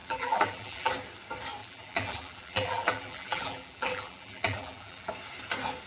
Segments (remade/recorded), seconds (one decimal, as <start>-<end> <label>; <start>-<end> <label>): 0.0-0.9 remade; 0.9-1.6 recorded; 1.6-5.1 remade; 5.1-5.9 recorded